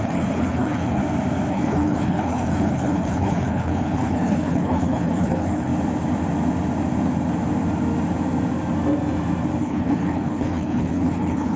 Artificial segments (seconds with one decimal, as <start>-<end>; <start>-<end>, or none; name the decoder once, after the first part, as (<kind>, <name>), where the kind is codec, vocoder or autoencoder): 0.0-1.0 (codec, HILCodec); 1.5-5.7; 9.6-11.6